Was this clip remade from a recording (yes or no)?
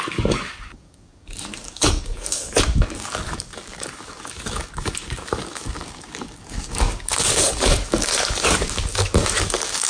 yes